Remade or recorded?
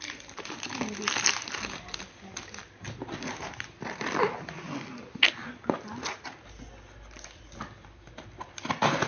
recorded